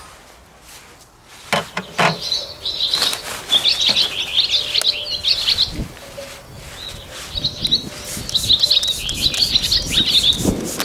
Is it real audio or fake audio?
real